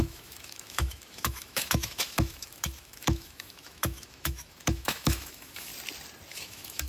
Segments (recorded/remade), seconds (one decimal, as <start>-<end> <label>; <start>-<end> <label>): 0.0-5.7 remade; 5.7-6.3 recorded; 6.3-6.9 remade